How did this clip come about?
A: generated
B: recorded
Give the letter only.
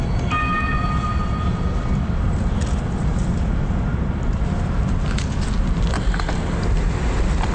B